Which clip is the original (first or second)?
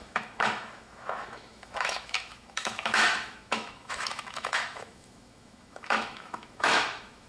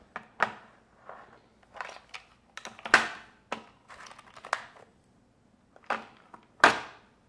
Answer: second